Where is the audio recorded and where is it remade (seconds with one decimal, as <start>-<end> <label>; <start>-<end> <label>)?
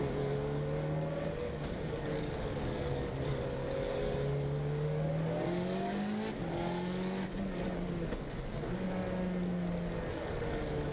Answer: 0.0-9.0 remade; 9.0-10.1 recorded; 10.1-10.9 remade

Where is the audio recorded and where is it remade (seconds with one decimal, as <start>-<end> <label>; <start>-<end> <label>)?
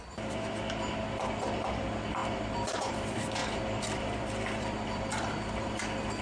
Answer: 0.0-3.4 recorded; 3.4-5.8 remade; 5.8-6.2 recorded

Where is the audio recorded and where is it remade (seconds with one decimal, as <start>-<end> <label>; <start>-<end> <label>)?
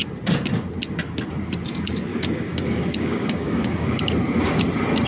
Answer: 0.0-2.1 recorded; 2.1-4.0 remade; 4.0-5.1 recorded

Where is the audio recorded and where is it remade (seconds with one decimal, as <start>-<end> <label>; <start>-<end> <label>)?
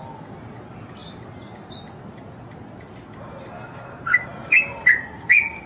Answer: 0.0-5.7 recorded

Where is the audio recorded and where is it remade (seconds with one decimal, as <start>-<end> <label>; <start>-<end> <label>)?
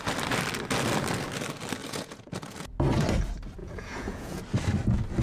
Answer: 0.0-1.8 recorded; 1.8-2.7 remade; 2.7-3.6 recorded; 3.6-4.4 remade; 4.4-5.2 recorded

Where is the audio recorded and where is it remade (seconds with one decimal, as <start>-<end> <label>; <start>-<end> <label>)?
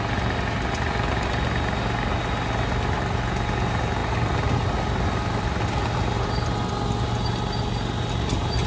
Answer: 0.0-8.7 recorded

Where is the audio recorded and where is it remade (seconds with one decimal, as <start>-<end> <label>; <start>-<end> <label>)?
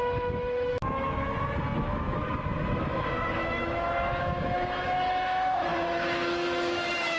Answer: 0.0-7.2 remade